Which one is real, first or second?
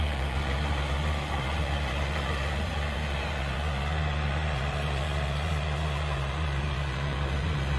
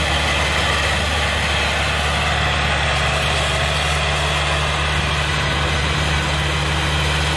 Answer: second